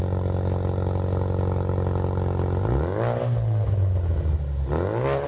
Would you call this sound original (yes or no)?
yes